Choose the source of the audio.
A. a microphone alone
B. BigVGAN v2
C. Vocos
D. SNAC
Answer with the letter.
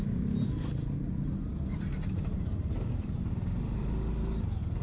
A